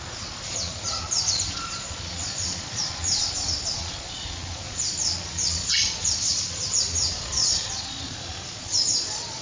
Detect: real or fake fake